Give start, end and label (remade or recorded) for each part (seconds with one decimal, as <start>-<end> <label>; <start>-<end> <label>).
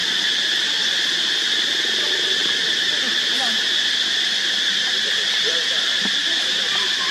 0.0-2.4 recorded; 2.4-7.1 remade